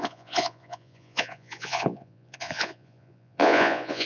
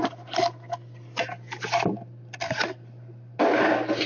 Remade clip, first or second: first